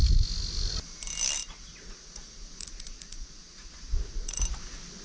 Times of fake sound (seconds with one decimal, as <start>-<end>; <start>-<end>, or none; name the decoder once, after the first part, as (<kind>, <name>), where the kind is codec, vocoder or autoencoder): 1.4-4.4 (vocoder, Vocos)